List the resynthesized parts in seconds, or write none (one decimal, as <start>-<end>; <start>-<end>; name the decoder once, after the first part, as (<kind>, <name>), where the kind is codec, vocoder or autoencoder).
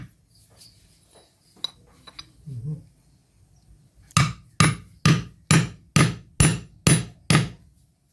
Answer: none